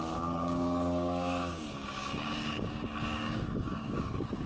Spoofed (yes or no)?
yes